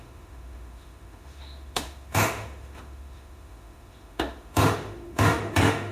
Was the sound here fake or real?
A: fake